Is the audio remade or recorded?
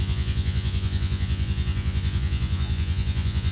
remade